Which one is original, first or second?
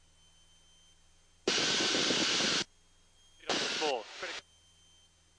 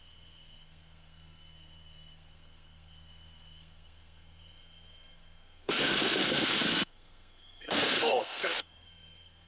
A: first